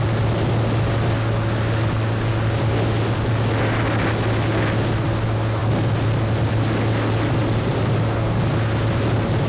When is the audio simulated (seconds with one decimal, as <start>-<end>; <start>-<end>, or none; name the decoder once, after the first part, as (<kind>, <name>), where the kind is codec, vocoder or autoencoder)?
none